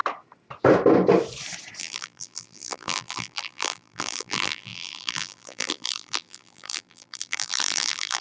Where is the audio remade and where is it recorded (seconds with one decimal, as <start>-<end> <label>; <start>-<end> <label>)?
0.0-1.8 recorded; 1.8-8.2 remade